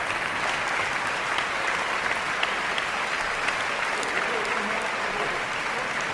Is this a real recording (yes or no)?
yes